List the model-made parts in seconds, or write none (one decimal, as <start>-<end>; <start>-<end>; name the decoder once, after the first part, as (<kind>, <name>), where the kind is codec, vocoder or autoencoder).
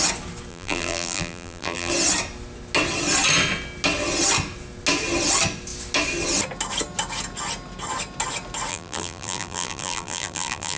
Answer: 0.5-1.9 (vocoder, BigVGAN v2); 8.7-10.8